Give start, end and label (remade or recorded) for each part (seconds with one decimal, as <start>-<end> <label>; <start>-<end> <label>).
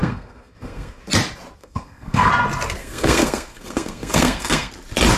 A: 0.0-1.0 remade; 1.0-1.6 recorded; 1.6-2.3 remade; 2.3-2.8 recorded; 2.8-4.7 remade; 4.7-5.2 recorded